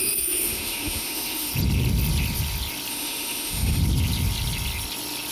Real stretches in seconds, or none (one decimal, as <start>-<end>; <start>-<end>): 1.5-2.9; 3.8-5.3